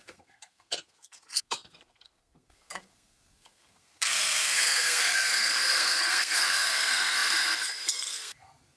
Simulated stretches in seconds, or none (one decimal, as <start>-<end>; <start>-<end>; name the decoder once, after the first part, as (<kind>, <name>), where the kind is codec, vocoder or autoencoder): 0.0-8.8 (codec, SNAC)